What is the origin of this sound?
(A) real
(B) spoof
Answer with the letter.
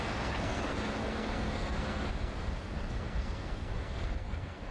B